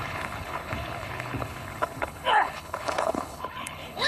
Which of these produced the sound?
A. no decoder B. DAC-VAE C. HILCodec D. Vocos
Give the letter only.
C